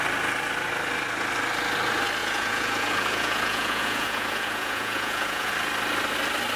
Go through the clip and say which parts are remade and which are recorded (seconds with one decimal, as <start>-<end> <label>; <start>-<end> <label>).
0.0-2.2 recorded; 2.2-5.5 remade; 5.5-6.6 recorded